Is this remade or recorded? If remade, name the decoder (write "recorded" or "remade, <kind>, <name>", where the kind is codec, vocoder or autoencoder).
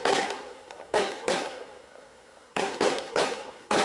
remade, codec, SNAC